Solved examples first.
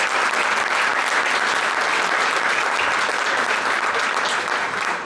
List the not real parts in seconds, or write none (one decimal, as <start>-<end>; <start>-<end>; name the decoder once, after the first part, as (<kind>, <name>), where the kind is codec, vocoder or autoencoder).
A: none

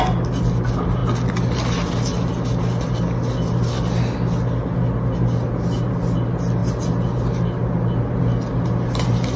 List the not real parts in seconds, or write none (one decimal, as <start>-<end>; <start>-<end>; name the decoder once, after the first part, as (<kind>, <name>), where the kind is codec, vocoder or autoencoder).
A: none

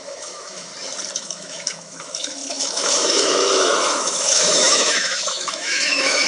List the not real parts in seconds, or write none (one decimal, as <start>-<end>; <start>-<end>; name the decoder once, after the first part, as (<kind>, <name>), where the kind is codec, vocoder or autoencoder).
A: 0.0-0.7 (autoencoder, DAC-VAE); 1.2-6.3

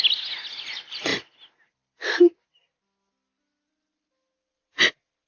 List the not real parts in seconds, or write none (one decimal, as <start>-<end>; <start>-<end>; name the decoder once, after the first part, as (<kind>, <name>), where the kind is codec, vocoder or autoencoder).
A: none